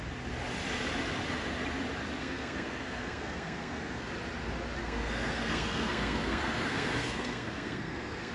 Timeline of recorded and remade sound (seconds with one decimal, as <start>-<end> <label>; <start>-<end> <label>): 0.0-2.2 recorded; 2.2-4.1 remade; 4.1-4.8 recorded; 4.8-8.3 remade